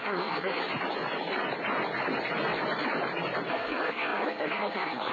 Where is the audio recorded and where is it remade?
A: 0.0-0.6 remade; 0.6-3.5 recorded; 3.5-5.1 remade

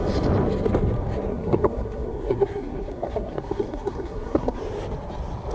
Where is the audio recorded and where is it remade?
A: 0.0-1.3 recorded; 1.3-4.6 remade; 4.6-5.5 recorded

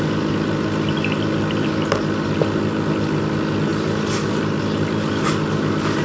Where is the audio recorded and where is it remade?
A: 0.0-6.0 recorded

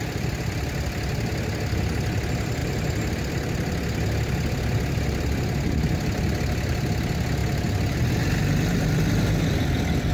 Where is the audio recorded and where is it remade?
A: 0.0-10.1 recorded

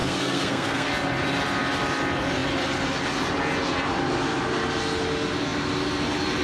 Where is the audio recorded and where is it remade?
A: 0.0-0.9 remade; 0.9-6.4 recorded

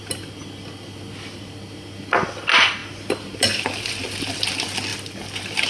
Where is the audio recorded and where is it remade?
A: 0.0-5.7 recorded